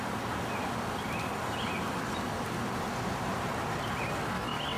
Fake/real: real